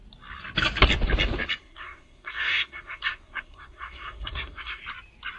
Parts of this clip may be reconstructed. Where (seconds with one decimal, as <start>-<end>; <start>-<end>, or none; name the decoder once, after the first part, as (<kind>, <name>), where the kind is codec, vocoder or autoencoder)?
1.6-4.8 (codec, SNAC)